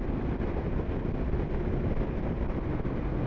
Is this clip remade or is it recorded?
recorded